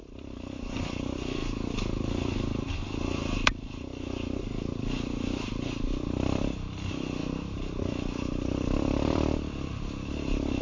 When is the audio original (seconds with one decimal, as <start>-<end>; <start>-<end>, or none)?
1.4-2.1

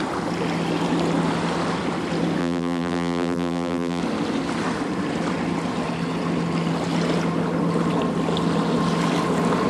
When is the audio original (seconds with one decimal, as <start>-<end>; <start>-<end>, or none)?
0.0-2.4; 4.0-9.7

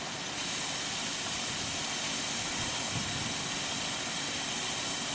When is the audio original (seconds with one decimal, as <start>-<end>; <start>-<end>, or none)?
0.0-5.1

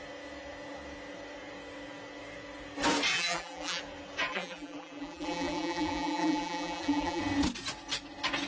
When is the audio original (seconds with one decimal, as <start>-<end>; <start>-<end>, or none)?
0.0-3.1; 3.8-4.3; 7.2-8.5

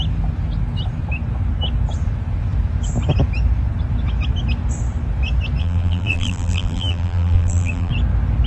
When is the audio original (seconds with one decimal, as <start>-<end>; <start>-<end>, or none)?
0.0-5.6; 7.9-8.5

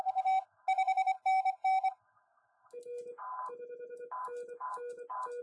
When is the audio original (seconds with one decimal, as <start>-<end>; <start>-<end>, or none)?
0.0-5.4

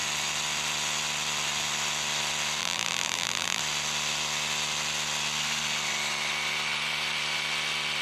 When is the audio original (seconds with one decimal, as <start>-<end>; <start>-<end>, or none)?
0.0-2.6; 3.6-8.0